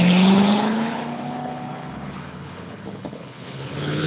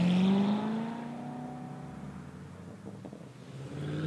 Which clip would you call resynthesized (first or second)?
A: first